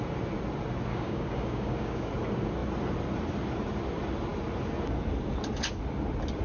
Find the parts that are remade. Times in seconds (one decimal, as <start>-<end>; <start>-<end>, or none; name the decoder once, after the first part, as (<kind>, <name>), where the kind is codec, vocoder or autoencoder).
0.9-2.1 (codec, DAC)

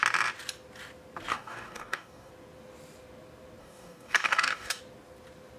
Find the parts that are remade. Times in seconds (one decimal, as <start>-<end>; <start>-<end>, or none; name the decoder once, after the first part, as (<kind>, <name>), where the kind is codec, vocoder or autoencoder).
1.3-2.3 (codec, DAC); 3.6-4.8

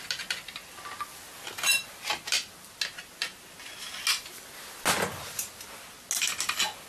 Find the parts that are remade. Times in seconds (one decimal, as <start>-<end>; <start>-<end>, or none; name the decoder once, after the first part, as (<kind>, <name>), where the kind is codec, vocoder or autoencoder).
none

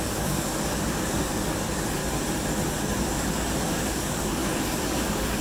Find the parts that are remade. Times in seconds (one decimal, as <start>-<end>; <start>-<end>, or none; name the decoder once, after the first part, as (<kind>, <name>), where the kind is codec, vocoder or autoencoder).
0.0-2.0 (codec, DAC); 3.1-5.4

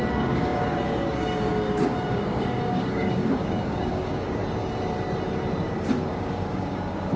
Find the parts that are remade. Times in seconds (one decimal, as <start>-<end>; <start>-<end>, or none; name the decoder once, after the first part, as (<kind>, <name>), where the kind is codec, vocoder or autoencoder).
0.0-4.4 (codec, DAC); 5.6-7.2

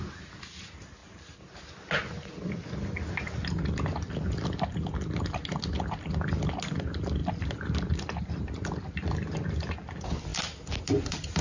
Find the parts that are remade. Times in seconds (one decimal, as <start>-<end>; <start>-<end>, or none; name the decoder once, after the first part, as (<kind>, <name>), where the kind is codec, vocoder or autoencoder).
none